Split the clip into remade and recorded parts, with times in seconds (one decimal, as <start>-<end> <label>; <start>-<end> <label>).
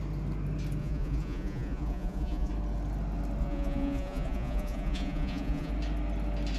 0.0-0.8 recorded; 0.8-2.5 remade; 2.5-3.4 recorded; 3.4-5.7 remade; 5.7-6.6 recorded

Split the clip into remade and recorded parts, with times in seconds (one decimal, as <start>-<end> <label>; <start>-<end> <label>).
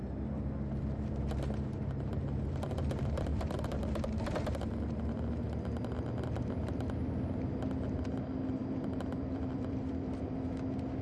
0.0-3.3 recorded; 3.3-4.1 remade; 4.1-8.6 recorded; 8.6-10.2 remade; 10.2-11.0 recorded